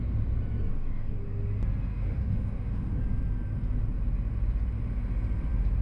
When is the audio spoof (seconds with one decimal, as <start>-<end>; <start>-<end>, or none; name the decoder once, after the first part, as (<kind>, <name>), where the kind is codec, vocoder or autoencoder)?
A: 0.7-1.2 (codec, DAC); 1.9-3.0